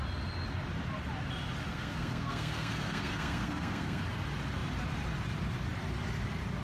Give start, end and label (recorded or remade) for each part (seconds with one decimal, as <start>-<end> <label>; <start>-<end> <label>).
0.0-1.7 recorded; 1.7-4.0 remade; 4.0-6.6 recorded